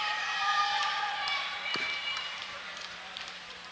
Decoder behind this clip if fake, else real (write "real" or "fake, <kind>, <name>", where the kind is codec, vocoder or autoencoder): fake, vocoder, BigVGAN v2